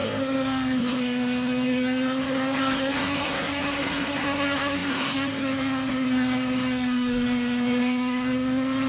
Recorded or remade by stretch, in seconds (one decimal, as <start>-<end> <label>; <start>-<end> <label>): 0.0-8.9 remade